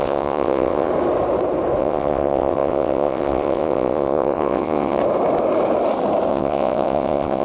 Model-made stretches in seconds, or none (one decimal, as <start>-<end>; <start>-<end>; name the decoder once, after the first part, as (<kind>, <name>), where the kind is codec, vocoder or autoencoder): 0.0-0.9 (vocoder, WaveNeXt); 1.8-5.0; 6.3-7.4